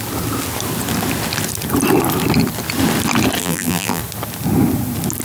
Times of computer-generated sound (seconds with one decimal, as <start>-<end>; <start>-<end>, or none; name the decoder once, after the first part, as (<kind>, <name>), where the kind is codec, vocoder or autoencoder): 3.4-4.0 (vocoder, BigVGAN v2)